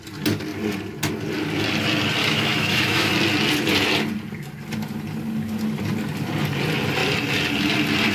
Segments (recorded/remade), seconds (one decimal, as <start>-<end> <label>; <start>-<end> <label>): 0.0-2.2 recorded; 2.2-3.1 remade; 3.1-8.1 recorded